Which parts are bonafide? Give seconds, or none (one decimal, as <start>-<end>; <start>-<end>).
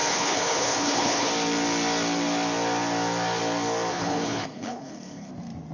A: 1.3-3.9; 5.3-5.7